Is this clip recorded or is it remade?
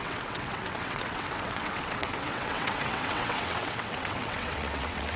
remade